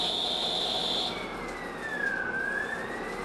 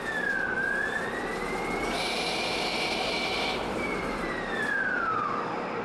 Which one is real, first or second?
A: first